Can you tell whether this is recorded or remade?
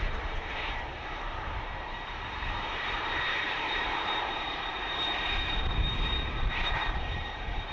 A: remade